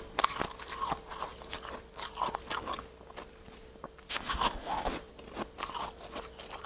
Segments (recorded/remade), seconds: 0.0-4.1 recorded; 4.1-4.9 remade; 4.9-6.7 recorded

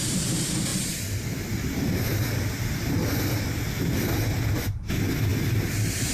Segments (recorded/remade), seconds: 0.0-0.7 recorded; 0.7-4.1 remade; 4.1-5.3 recorded; 5.3-6.1 remade